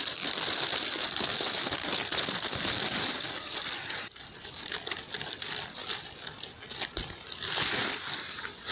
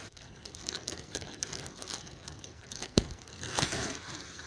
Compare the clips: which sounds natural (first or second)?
first